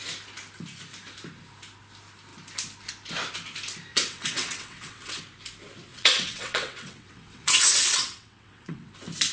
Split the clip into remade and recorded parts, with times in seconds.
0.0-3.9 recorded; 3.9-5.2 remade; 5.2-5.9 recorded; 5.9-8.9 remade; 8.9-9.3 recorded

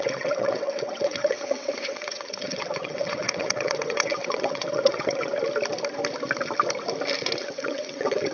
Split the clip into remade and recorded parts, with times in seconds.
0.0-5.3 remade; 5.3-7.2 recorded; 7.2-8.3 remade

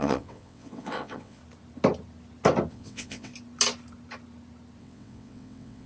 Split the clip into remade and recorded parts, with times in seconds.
0.0-1.4 remade; 1.4-2.7 recorded; 2.7-3.3 remade; 3.3-4.8 recorded; 4.8-5.9 remade